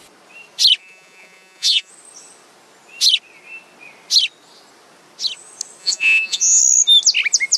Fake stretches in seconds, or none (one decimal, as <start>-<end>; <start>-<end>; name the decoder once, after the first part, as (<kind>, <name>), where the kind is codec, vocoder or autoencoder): 0.8-1.9 (vocoder, Vocos); 5.8-6.6